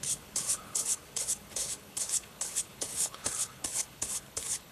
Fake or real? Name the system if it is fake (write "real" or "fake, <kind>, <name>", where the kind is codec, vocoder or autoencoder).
fake, codec, HILCodec